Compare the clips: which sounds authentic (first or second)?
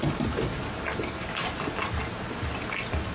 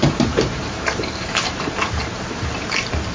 first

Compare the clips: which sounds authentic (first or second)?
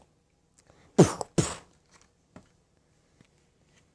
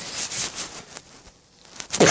first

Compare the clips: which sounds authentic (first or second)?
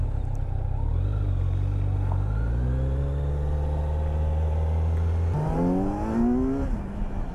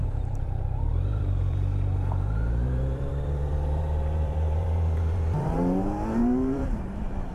first